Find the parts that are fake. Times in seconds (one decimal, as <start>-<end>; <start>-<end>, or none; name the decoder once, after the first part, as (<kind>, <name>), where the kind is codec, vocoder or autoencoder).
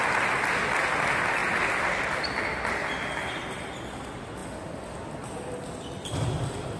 none